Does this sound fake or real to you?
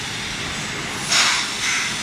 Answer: real